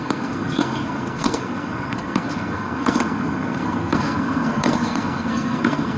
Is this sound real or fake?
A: fake